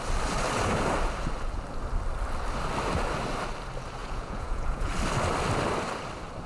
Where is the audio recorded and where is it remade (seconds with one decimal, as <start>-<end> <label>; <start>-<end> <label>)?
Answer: 0.0-4.0 recorded; 4.0-4.9 remade; 4.9-6.5 recorded